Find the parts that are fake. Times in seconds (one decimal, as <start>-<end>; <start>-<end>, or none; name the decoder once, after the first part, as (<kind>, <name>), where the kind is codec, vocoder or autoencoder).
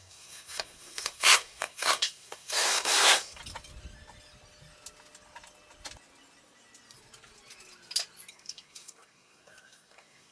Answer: 0.0-3.4 (codec, SNAC); 8.3-10.3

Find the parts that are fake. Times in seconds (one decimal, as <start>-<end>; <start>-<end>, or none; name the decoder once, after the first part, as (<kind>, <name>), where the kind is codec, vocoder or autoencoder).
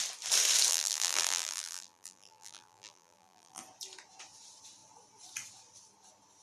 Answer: 0.7-3.6 (vocoder, BigVGAN v2)